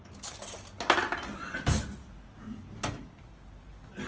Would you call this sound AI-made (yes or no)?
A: no